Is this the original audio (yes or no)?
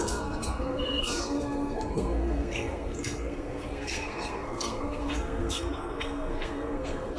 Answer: no